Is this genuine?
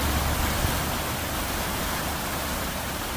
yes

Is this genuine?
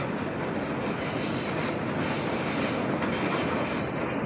yes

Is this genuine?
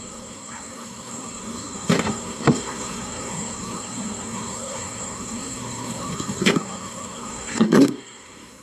no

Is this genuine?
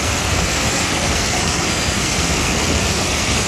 no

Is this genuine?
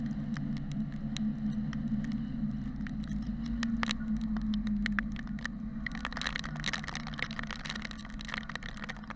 yes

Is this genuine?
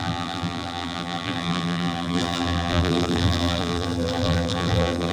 no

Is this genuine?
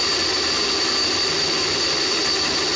yes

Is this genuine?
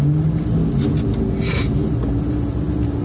yes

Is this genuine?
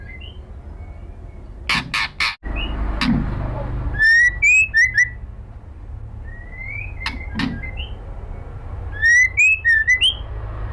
yes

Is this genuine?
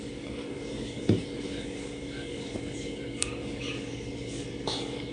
no